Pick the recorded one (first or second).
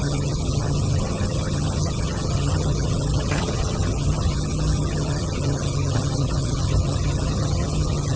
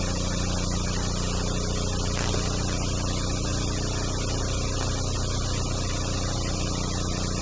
second